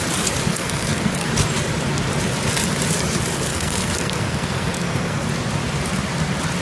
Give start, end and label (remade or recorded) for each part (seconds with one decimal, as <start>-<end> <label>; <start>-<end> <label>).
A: 0.0-0.5 recorded; 0.5-1.3 remade; 1.3-3.5 recorded; 3.5-5.3 remade; 5.3-6.6 recorded